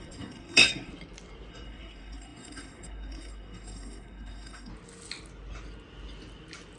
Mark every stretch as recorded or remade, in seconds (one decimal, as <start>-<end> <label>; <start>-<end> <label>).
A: 0.0-0.9 remade; 0.9-1.5 recorded; 1.5-4.7 remade; 4.7-6.8 recorded